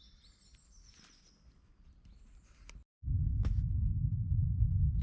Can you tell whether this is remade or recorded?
recorded